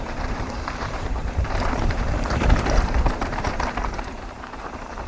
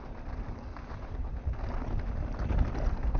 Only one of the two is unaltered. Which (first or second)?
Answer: second